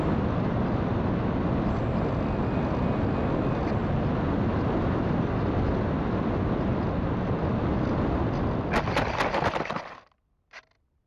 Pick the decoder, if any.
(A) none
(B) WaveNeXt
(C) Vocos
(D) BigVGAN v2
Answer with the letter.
A